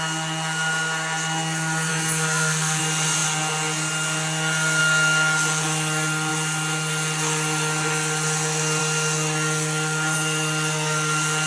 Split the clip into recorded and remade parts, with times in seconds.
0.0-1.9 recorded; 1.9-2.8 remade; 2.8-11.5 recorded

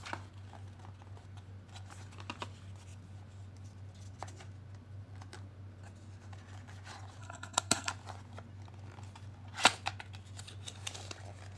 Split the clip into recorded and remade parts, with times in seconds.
0.0-7.2 recorded; 7.2-7.9 remade; 7.9-11.6 recorded